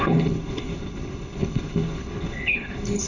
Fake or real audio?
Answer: fake